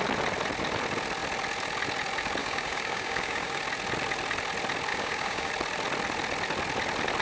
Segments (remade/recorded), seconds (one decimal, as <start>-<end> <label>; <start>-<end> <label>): 0.0-2.4 recorded; 2.4-3.6 remade; 3.6-4.9 recorded; 4.9-5.5 remade; 5.5-7.2 recorded

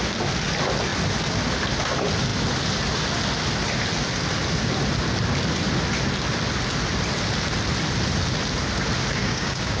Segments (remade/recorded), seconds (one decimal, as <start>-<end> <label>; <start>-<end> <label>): 0.0-9.2 recorded; 9.2-9.8 remade

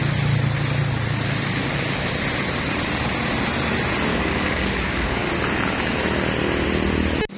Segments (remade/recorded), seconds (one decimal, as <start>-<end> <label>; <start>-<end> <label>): 0.0-4.1 recorded; 4.1-5.3 remade; 5.3-7.4 recorded

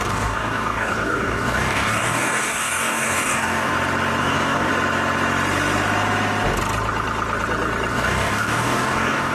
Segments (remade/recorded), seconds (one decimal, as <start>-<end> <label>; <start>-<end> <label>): 0.0-3.7 remade; 3.7-4.2 recorded; 4.2-4.7 remade; 4.7-7.9 recorded; 7.9-9.3 remade

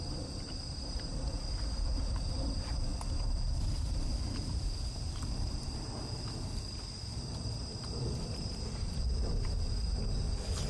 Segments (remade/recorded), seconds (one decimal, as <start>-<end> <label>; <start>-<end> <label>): 0.0-10.7 recorded

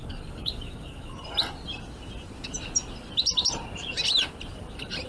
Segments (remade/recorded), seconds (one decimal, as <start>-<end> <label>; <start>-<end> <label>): 0.0-1.2 remade; 1.2-5.1 recorded

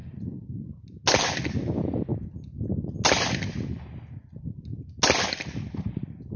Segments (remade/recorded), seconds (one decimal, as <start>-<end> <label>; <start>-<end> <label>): 0.0-6.4 recorded

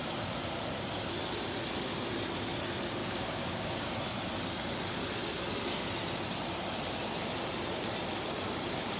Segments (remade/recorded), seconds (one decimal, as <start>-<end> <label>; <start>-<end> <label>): 0.0-3.0 recorded; 3.0-3.9 remade; 3.9-9.0 recorded